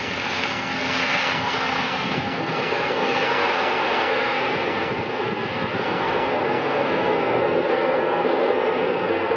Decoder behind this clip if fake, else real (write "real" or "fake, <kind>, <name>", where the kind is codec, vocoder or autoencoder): fake, codec, SNAC